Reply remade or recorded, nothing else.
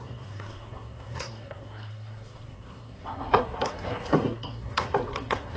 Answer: remade